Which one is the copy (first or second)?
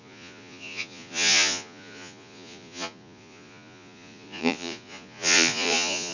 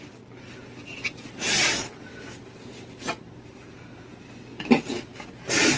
first